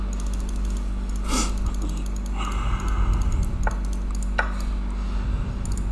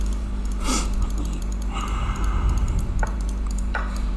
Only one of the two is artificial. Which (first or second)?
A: second